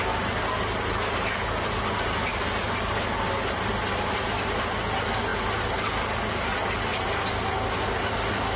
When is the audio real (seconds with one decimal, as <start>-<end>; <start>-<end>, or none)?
0.0-8.6